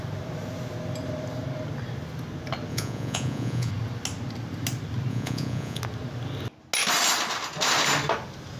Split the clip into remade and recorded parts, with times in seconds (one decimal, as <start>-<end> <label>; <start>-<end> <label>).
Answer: 0.0-2.7 recorded; 2.7-3.7 remade; 3.7-5.1 recorded; 5.1-5.8 remade; 5.8-8.6 recorded